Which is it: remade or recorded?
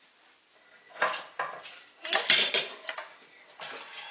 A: recorded